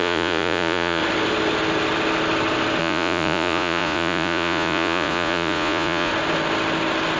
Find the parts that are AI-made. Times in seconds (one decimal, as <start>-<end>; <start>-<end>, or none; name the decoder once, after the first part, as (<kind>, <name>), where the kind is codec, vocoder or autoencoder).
0.0-1.0 (vocoder, Vocos); 2.8-6.1